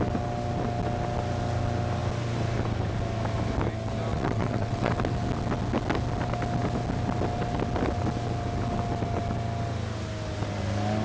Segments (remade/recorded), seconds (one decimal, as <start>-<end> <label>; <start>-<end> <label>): 0.0-4.1 recorded; 4.1-4.9 remade; 4.9-11.0 recorded